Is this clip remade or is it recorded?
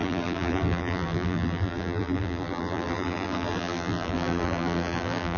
remade